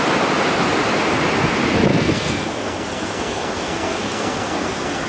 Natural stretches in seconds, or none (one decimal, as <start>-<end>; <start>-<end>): 0.0-1.9